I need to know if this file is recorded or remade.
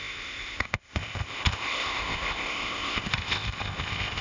remade